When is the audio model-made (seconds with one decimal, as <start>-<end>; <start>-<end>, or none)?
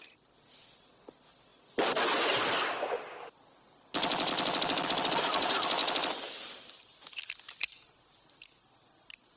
none